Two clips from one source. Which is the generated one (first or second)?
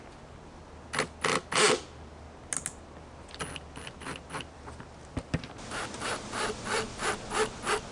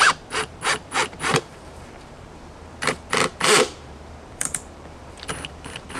second